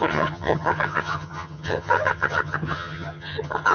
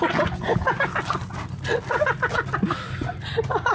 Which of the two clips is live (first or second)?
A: second